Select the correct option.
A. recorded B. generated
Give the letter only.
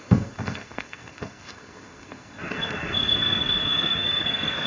B